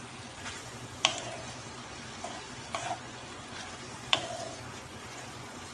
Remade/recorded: remade